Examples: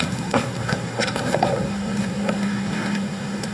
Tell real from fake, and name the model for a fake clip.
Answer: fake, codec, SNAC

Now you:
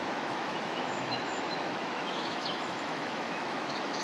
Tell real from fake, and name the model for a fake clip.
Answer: fake, autoencoder, DAC-VAE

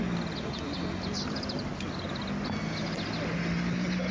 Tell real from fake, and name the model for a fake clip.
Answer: real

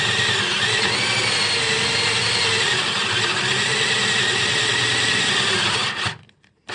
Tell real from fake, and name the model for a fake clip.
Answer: real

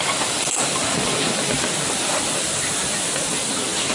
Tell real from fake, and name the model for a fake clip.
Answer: fake, vocoder, BigVGAN v2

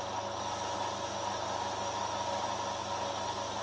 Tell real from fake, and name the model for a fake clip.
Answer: real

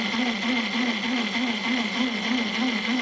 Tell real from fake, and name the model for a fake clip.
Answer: real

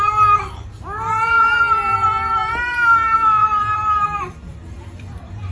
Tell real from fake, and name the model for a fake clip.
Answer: fake, vocoder, BigVGAN v2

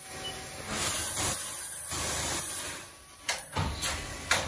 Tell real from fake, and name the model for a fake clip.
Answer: real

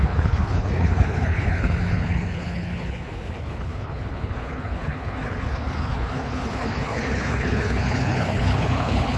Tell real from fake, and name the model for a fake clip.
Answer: fake, codec, HILCodec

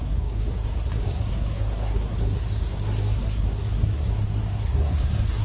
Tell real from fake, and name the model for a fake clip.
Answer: fake, codec, SNAC